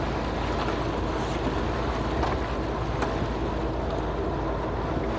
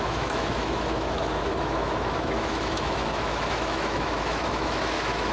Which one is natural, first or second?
first